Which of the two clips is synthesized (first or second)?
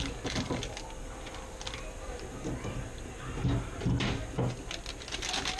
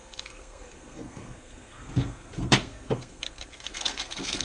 second